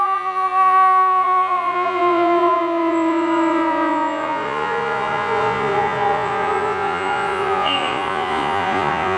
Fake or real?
fake